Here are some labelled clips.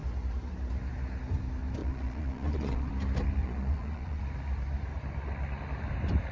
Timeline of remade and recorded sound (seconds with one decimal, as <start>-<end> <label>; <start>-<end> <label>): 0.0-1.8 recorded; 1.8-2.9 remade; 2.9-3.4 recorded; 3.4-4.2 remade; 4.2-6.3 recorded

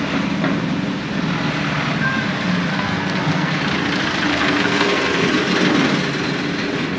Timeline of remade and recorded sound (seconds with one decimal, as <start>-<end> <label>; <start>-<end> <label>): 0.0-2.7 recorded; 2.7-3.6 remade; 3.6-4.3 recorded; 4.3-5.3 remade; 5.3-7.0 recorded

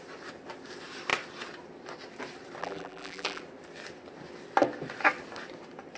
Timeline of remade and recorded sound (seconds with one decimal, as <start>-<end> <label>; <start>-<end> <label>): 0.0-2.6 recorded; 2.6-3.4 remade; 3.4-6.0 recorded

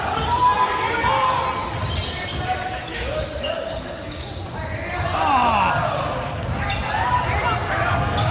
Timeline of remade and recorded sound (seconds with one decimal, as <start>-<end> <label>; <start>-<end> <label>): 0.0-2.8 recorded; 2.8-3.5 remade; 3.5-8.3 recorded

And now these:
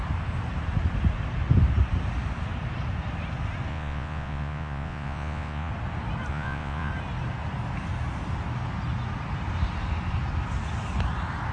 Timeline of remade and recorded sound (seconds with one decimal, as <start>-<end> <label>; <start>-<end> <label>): 0.0-3.7 recorded; 3.7-5.7 remade; 5.7-6.3 recorded; 6.3-6.9 remade; 6.9-11.5 recorded

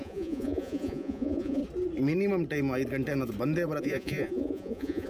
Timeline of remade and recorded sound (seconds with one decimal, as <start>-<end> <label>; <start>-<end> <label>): 0.0-1.6 remade; 1.6-3.8 recorded; 3.8-5.1 remade